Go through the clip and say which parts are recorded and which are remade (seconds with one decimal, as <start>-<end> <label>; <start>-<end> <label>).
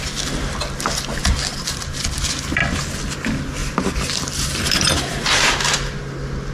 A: 0.0-1.5 recorded; 1.5-2.0 remade; 2.0-3.6 recorded; 3.6-6.0 remade; 6.0-6.5 recorded